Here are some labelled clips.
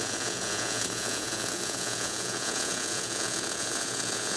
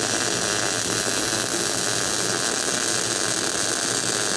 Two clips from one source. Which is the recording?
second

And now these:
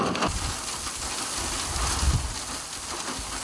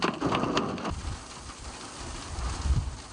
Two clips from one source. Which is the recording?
first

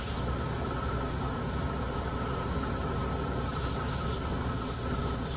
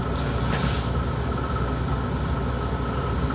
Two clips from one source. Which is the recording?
second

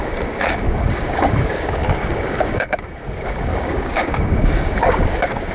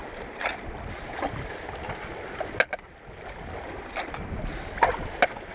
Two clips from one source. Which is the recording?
second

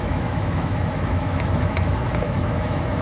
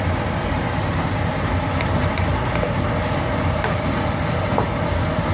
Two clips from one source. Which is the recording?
second